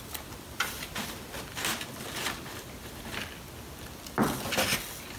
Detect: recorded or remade recorded